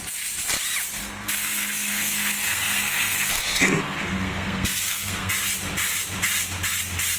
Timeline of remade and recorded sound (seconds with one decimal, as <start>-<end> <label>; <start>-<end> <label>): 0.0-1.0 recorded; 1.0-5.3 remade; 5.3-7.2 recorded